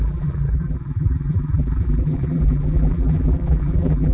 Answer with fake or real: fake